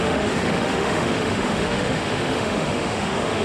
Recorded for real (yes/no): no